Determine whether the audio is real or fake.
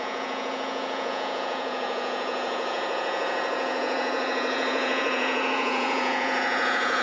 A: fake